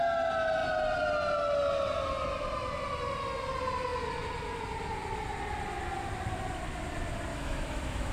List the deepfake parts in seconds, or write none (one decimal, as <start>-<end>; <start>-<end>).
7.3-8.1